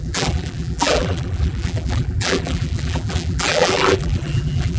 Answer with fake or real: fake